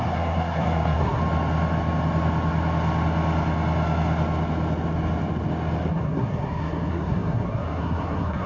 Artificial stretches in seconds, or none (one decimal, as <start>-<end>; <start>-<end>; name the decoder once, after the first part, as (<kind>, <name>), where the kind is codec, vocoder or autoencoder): 0.0-1.2 (codec, SNAC); 5.9-8.5